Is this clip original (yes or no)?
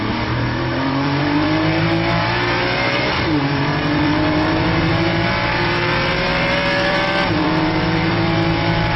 no